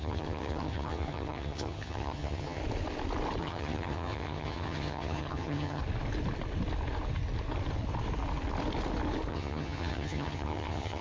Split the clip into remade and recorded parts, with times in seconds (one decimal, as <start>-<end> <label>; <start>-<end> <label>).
0.0-2.6 remade; 2.6-3.4 recorded; 3.4-5.8 remade; 5.8-9.3 recorded; 9.3-11.0 remade